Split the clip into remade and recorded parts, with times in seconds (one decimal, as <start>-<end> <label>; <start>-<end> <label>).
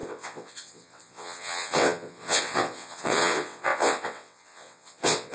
0.0-5.3 remade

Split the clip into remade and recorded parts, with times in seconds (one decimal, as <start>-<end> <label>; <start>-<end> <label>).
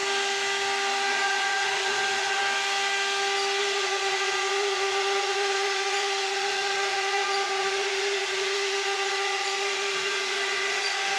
0.0-1.1 recorded; 1.1-2.4 remade; 2.4-3.6 recorded; 3.6-11.2 remade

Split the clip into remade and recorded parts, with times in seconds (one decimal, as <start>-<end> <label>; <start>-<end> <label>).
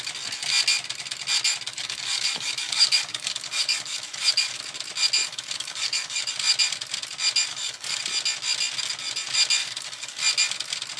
0.0-1.7 recorded; 1.7-4.6 remade; 4.6-5.2 recorded; 5.2-6.3 remade; 6.3-7.5 recorded; 7.5-8.0 remade; 8.0-9.6 recorded; 9.6-10.2 remade; 10.2-11.0 recorded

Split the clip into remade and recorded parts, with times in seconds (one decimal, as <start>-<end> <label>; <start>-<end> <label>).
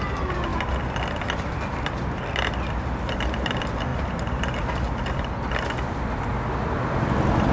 0.0-7.5 recorded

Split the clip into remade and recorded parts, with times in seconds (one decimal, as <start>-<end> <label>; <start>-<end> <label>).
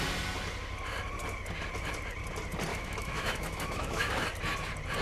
0.0-2.7 recorded; 2.7-4.1 remade; 4.1-5.0 recorded